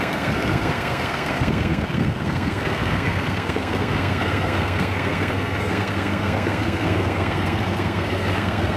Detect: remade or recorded remade